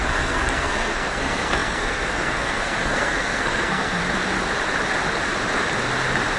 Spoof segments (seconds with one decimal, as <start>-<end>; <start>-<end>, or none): 0.0-4.0